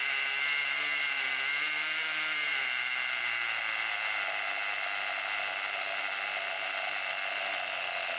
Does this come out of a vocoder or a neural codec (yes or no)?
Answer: no